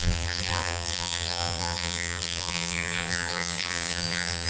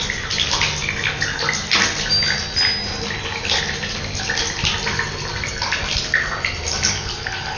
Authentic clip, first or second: second